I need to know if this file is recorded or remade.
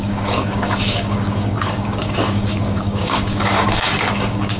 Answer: remade